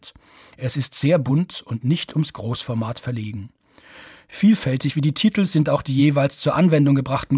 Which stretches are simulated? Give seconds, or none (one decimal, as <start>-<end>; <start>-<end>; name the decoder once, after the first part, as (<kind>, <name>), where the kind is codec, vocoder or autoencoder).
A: 0.6-1.3 (vocoder, BigVGAN v2); 2.1-3.9